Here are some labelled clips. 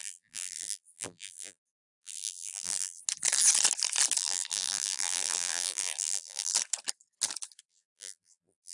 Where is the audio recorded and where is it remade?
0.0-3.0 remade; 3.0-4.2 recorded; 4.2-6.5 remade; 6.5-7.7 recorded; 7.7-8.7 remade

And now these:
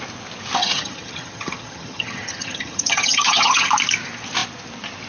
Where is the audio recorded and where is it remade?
0.0-0.6 recorded; 0.6-3.7 remade; 3.7-5.1 recorded

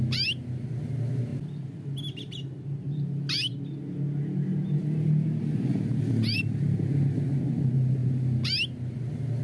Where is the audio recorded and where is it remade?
0.0-9.4 recorded

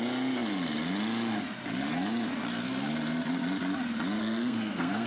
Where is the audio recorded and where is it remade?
0.0-4.2 recorded; 4.2-5.1 remade

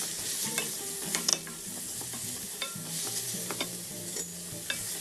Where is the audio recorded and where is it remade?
0.0-1.3 remade; 1.3-2.3 recorded; 2.3-4.3 remade; 4.3-5.0 recorded